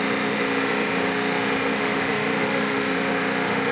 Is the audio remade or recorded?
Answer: remade